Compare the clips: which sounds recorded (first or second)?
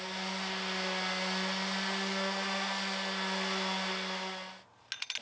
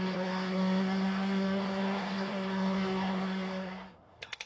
first